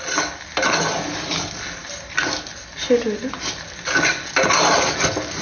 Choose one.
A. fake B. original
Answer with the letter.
B